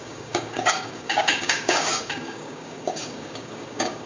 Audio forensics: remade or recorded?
remade